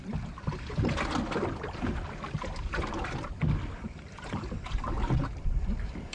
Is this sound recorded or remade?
recorded